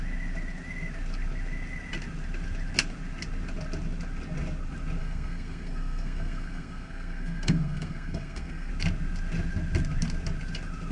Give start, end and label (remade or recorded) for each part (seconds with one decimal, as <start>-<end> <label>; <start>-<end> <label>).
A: 0.0-5.0 recorded; 5.0-8.7 remade; 8.7-10.9 recorded